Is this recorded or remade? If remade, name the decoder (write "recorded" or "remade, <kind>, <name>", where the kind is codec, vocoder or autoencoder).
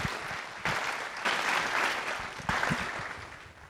recorded